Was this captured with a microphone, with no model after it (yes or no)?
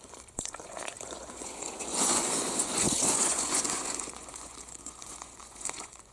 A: no